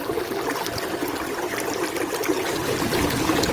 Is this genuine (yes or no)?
yes